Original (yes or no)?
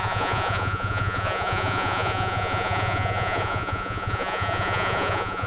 no